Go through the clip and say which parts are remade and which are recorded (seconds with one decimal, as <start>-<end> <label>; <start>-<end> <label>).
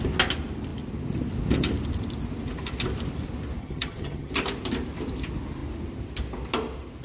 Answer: 0.0-3.6 recorded; 3.6-4.3 remade; 4.3-7.0 recorded